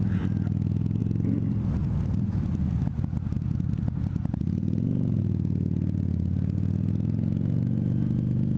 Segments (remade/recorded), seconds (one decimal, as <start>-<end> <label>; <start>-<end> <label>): 0.0-1.0 recorded; 1.0-5.2 remade; 5.2-8.6 recorded